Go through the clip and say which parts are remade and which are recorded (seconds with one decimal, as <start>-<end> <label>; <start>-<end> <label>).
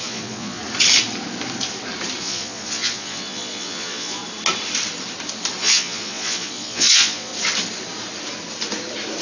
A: 0.0-0.6 remade; 0.6-2.2 recorded; 2.2-4.2 remade; 4.2-5.6 recorded; 5.6-7.3 remade; 7.3-9.2 recorded